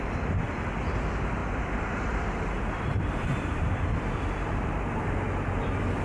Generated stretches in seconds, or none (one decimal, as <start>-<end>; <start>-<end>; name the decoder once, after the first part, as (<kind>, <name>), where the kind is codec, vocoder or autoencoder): 1.4-5.0 (vocoder, BigVGAN v2)